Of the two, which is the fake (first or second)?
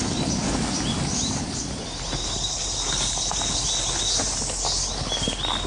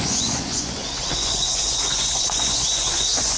second